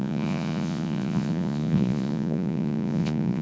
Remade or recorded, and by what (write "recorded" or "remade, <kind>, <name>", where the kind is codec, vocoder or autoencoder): remade, vocoder, Vocos